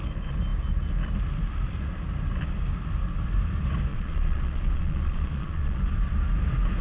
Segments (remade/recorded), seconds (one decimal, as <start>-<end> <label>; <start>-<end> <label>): 0.0-3.9 recorded; 3.9-5.8 remade; 5.8-6.8 recorded